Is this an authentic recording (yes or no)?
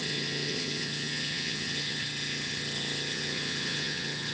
no